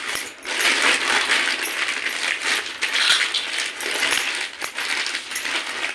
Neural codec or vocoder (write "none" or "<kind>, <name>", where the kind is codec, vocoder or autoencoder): none